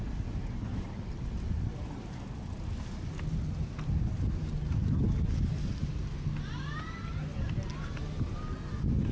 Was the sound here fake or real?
real